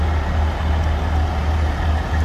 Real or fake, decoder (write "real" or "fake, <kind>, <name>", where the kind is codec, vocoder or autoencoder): real